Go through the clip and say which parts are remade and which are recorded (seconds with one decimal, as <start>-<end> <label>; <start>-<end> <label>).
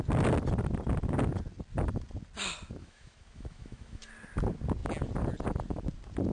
0.0-2.8 recorded; 2.8-4.1 remade; 4.1-6.3 recorded